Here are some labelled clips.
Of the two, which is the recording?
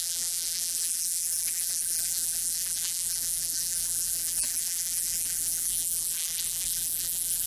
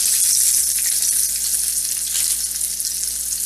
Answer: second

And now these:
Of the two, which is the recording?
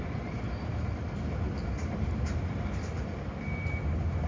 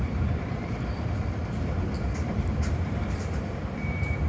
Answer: first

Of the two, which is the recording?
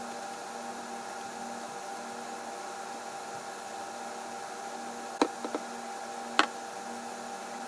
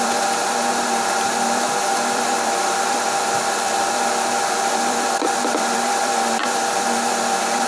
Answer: first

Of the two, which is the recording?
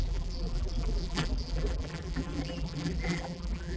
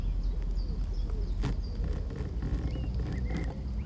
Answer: second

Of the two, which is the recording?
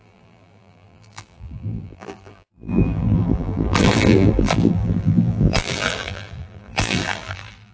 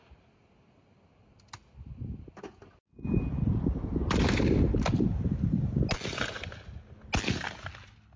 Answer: second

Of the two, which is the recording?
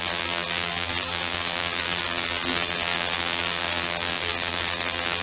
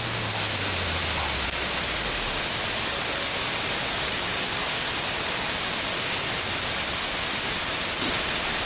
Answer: second